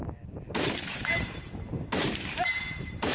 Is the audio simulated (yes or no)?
yes